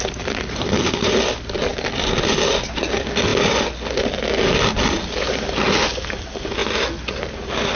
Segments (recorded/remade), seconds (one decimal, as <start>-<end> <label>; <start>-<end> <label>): 0.0-7.8 recorded